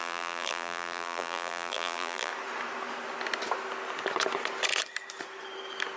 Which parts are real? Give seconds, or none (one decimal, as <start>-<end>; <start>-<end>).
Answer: 2.3-6.0

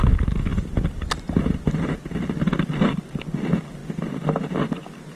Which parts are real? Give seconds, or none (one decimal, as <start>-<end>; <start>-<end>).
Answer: 0.0-5.2

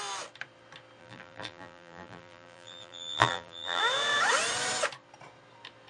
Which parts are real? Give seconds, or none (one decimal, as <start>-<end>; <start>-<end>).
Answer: 0.0-1.0; 3.8-5.9

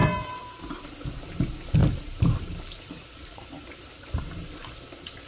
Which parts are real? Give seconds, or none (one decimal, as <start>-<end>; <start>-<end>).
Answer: 0.8-1.8; 4.2-5.3

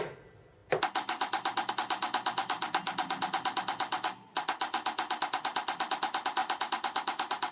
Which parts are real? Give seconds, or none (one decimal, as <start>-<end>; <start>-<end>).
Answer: 0.0-6.4

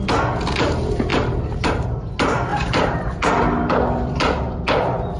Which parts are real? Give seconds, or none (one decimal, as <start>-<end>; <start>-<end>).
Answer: 0.0-1.1; 2.1-2.5; 3.3-5.2